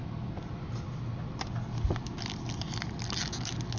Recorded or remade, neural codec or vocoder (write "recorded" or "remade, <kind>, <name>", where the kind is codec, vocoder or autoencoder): recorded